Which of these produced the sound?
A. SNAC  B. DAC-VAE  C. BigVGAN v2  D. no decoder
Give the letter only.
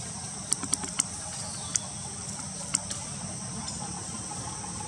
D